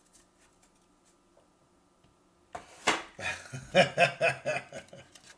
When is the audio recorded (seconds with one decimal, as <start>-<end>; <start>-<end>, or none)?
0.0-5.4